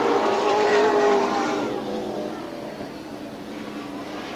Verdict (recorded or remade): remade